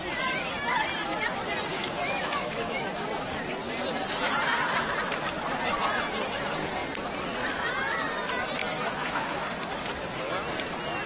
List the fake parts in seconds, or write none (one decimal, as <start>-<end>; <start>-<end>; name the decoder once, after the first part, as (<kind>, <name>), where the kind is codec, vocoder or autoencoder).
1.7-2.8 (autoencoder, DAC-VAE); 8.6-9.4